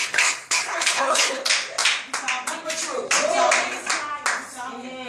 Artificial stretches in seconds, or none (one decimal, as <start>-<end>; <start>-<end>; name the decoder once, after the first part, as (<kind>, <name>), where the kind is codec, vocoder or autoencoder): 0.0-1.4 (codec, HILCodec)